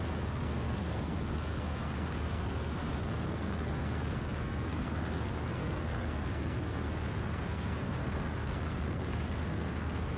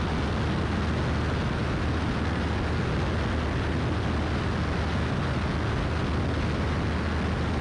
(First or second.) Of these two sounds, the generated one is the first